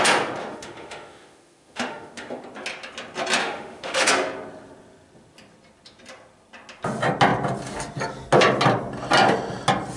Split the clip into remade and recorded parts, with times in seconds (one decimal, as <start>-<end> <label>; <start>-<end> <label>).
0.0-0.4 recorded; 0.4-2.4 remade; 2.4-3.4 recorded; 3.4-4.1 remade; 4.1-10.0 recorded